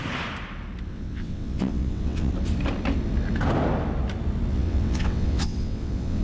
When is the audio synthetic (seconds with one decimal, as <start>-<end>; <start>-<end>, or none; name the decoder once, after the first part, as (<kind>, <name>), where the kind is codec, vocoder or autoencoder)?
0.9-2.3 (vocoder, WaveNeXt); 4.5-6.2